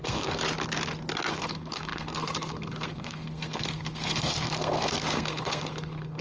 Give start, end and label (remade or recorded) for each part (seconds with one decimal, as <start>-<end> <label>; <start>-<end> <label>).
0.0-0.4 remade; 0.4-1.3 recorded; 1.3-6.2 remade